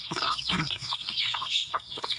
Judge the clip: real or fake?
fake